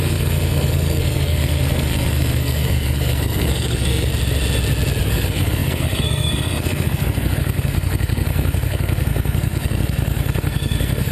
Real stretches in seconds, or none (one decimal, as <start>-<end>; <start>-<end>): 4.1-5.1